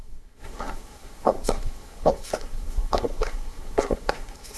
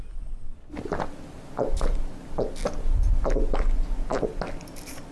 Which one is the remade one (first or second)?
first